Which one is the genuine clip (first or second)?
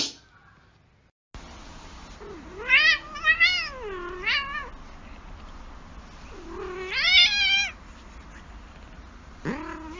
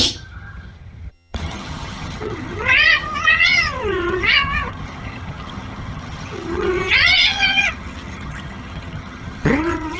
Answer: first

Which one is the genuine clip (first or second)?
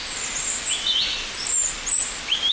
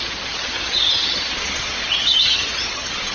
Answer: first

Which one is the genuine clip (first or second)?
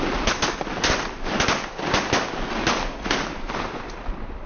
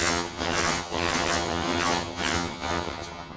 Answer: first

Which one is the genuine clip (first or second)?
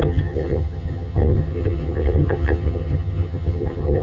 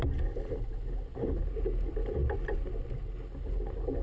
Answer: second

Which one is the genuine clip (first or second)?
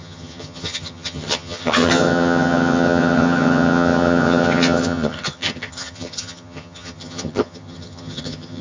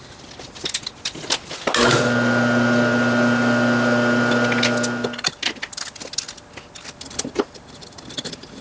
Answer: second